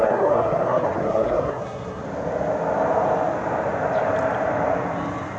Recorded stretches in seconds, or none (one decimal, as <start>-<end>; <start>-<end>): 2.0-5.4